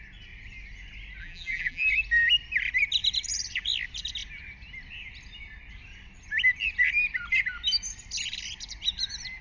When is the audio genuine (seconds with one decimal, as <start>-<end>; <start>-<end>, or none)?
0.0-1.2; 1.9-9.4